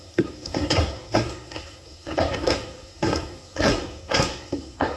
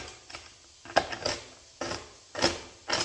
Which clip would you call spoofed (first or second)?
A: first